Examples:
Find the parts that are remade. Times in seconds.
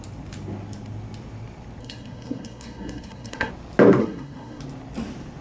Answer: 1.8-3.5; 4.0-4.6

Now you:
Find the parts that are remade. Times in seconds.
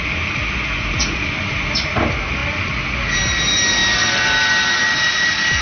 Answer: none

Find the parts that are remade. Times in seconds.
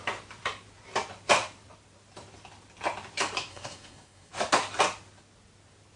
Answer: 3.5-4.3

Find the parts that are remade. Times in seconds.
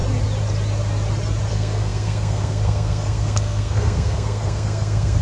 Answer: 1.5-5.2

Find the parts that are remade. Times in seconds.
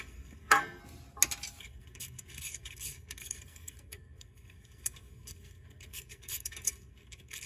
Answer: 0.0-0.8; 1.6-7.5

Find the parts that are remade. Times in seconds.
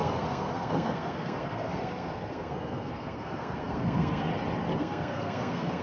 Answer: 0.0-4.3; 4.8-5.8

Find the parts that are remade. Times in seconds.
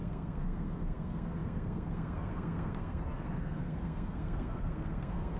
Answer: 0.0-5.4